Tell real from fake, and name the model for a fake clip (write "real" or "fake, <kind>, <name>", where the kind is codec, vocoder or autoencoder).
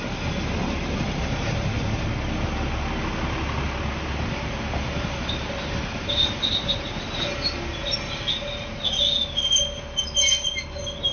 real